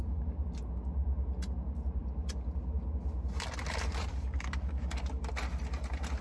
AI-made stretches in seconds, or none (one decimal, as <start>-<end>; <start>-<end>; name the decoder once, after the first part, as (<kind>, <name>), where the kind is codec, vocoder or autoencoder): 4.1-5.0 (codec, DAC)